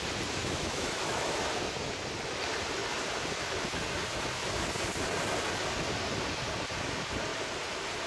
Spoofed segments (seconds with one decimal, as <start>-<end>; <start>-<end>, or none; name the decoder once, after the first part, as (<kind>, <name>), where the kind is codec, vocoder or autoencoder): 0.4-1.4 (autoencoder, DAC-VAE)